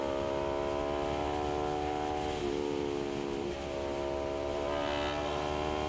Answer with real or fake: real